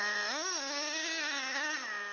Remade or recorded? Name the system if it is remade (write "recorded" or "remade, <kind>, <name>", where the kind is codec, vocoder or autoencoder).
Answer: recorded